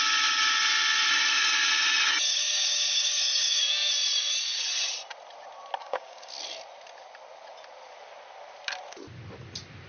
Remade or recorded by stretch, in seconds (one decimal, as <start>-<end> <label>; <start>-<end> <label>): 0.0-2.3 recorded; 2.3-3.6 remade; 3.6-5.8 recorded; 5.8-6.3 remade; 6.3-9.9 recorded